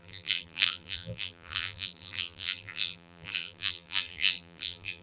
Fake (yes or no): yes